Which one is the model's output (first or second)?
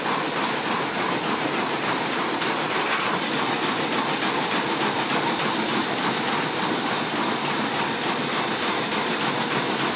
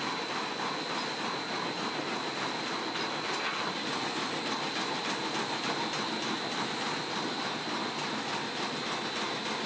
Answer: first